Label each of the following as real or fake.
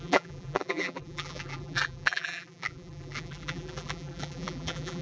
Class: fake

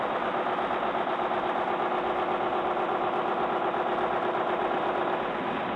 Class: real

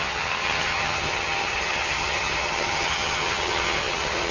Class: fake